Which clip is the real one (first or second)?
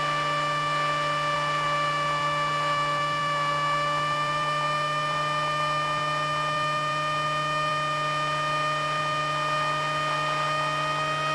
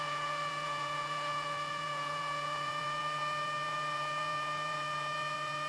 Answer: first